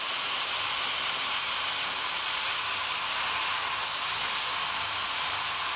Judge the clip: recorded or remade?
recorded